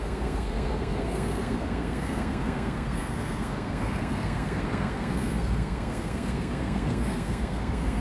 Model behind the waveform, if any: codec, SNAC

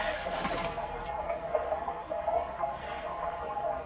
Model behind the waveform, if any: codec, SNAC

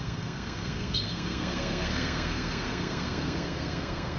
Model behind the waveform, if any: codec, SNAC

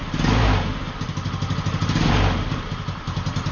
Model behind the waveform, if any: none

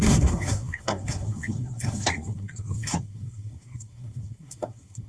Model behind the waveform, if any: codec, SNAC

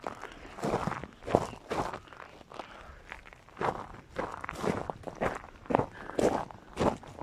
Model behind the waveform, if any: none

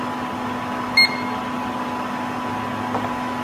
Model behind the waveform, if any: none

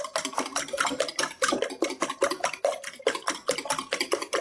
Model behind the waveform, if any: none